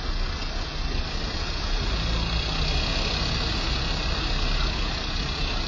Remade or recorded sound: recorded